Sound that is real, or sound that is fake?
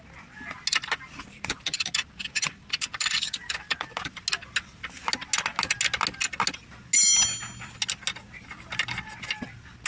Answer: real